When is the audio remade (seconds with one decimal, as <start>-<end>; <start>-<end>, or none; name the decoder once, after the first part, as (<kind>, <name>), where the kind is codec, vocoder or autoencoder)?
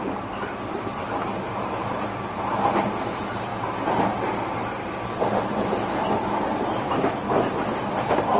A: 0.0-3.5 (vocoder, BigVGAN v2); 7.4-8.4